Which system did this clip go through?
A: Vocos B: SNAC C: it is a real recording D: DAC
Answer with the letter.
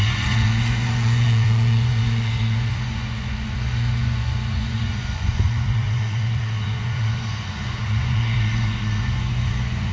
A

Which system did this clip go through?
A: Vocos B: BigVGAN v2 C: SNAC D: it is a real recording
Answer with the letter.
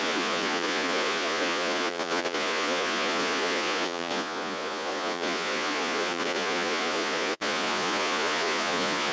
A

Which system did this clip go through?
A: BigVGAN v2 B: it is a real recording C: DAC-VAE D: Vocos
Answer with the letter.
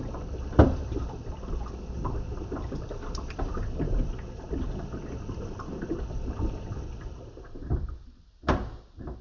B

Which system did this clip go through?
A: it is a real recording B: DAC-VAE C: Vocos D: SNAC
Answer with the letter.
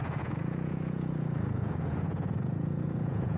C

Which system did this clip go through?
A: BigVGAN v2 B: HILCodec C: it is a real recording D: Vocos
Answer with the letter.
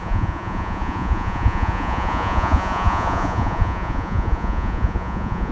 D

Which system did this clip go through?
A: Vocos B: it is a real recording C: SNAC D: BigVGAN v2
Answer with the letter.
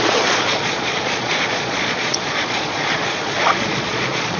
A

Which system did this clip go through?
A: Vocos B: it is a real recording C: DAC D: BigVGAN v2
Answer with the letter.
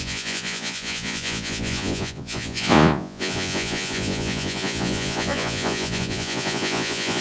A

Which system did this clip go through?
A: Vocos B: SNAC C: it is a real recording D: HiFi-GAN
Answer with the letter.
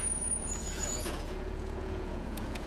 A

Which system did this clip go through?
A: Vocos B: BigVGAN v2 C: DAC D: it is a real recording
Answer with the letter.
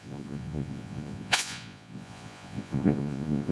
A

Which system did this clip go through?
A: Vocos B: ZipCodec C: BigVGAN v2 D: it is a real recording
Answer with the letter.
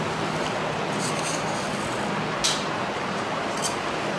D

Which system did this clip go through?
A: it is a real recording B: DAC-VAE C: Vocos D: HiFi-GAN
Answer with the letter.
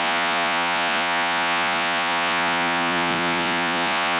C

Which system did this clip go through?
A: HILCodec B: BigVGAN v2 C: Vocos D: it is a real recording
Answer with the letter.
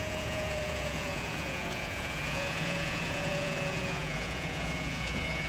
C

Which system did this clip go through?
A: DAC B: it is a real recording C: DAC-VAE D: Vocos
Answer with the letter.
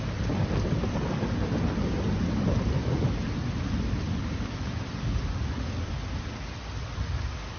B